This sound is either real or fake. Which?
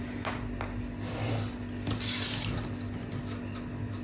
real